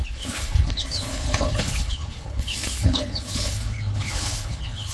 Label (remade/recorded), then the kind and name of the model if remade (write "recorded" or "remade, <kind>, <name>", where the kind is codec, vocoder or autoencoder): remade, codec, HILCodec